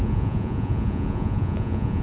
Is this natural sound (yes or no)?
no